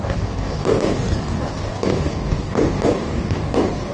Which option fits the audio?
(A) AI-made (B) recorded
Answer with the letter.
A